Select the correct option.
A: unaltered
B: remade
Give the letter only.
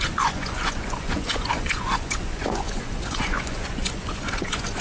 B